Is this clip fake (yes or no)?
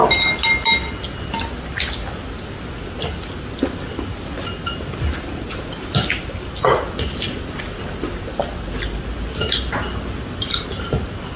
no